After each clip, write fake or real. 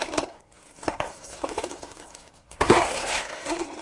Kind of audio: fake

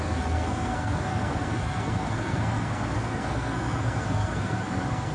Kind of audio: fake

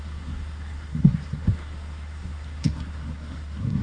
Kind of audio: fake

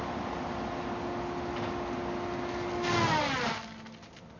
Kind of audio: real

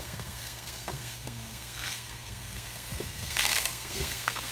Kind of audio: fake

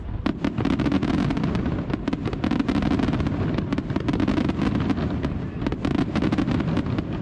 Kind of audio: real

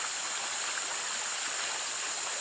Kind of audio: real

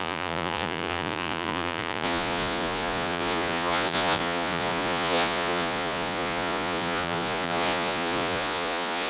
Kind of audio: fake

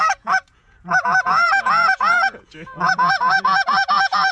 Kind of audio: fake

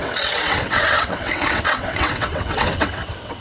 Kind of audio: fake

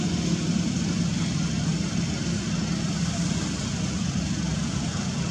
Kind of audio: real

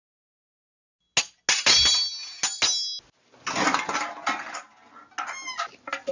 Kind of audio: real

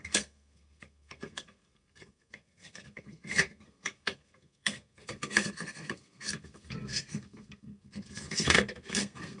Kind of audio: fake